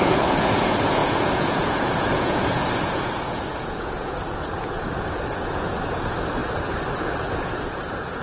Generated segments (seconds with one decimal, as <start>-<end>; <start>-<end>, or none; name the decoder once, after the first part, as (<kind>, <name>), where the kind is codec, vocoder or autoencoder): 0.0-6.4 (vocoder, Vocos); 7.2-8.2